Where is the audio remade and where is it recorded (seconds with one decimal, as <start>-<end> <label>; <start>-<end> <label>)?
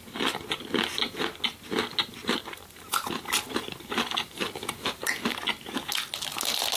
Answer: 0.0-2.2 recorded; 2.2-5.9 remade; 5.9-6.8 recorded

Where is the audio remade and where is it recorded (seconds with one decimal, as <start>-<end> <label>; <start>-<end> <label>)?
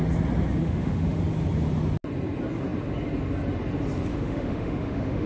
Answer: 0.0-0.6 recorded; 0.6-1.2 remade; 1.2-4.1 recorded; 4.1-5.3 remade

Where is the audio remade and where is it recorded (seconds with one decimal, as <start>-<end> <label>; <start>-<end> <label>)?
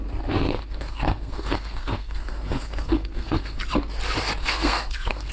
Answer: 0.0-0.5 recorded; 0.5-3.6 remade; 3.6-4.4 recorded; 4.4-5.3 remade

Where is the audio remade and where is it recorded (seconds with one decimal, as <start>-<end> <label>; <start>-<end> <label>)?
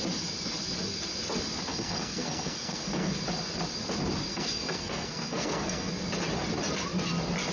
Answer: 0.0-1.7 recorded; 1.7-3.2 remade; 3.2-4.3 recorded; 4.3-5.9 remade; 5.9-7.5 recorded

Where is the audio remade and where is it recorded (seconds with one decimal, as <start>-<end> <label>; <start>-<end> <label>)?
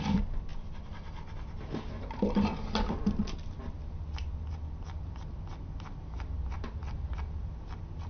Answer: 0.0-8.1 recorded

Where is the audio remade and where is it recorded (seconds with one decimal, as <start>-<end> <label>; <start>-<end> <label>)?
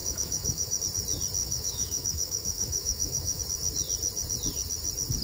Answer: 0.0-0.8 remade; 0.8-1.4 recorded; 1.4-3.4 remade; 3.4-5.2 recorded